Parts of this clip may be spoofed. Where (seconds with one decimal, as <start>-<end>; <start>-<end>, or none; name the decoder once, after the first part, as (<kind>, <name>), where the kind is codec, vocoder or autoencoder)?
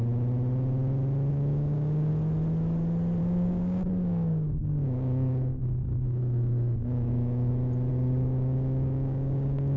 1.3-2.1 (codec, DAC); 3.2-7.5; 7.9-9.8